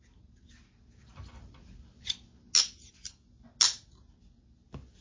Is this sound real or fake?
real